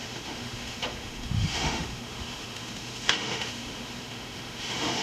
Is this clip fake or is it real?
fake